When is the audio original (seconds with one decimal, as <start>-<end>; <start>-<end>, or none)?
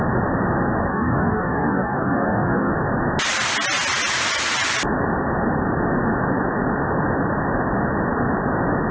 0.0-0.9; 2.7-8.9